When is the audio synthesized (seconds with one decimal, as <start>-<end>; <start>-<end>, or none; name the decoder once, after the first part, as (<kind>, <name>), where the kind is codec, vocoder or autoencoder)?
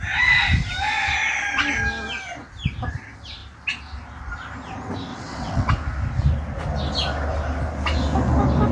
5.1-5.7 (vocoder, WaveNeXt)